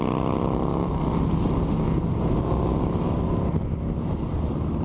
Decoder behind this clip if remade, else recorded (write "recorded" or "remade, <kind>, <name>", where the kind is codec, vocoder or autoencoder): recorded